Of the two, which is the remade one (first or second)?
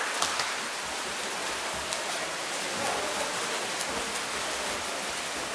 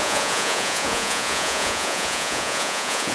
second